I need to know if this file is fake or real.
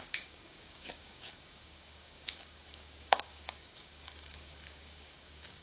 fake